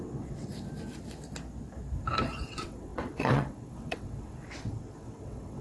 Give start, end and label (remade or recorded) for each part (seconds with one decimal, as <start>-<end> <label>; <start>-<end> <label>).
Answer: 0.0-0.5 remade; 0.5-2.5 recorded; 2.5-5.6 remade